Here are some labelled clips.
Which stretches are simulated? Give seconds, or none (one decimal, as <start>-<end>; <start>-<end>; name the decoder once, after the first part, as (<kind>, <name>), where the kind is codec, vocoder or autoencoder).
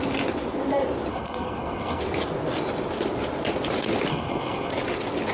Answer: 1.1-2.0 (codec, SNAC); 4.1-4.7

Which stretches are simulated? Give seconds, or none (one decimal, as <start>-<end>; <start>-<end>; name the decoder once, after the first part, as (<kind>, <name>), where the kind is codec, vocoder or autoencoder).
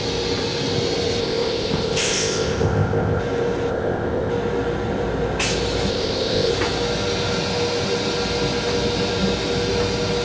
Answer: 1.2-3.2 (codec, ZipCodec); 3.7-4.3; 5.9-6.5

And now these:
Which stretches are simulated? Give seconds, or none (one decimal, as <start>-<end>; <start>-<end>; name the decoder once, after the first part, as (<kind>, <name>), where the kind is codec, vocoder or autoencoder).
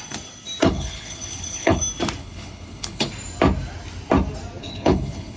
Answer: 0.6-1.8 (codec, HILCodec); 2.2-3.1; 4.6-5.4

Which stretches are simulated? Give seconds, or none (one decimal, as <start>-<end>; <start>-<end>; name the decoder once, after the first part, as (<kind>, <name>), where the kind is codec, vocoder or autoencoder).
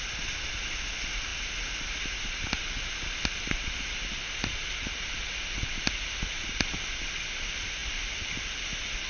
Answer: none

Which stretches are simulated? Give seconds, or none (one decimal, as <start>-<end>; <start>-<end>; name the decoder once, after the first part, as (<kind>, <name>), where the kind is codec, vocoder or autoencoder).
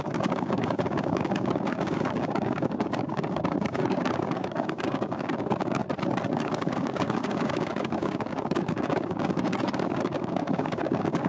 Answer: 0.0-5.8 (codec, DAC); 6.3-11.3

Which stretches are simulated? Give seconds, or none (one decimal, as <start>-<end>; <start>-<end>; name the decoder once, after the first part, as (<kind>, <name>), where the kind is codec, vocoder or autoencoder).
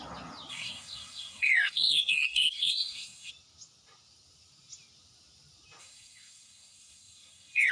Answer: 0.5-3.3 (codec, SNAC); 5.8-7.7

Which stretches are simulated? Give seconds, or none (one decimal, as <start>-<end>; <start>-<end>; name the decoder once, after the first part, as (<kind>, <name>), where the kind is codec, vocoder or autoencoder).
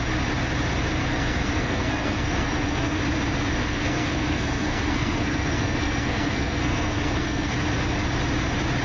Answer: 1.0-3.0 (codec, SNAC); 3.6-7.5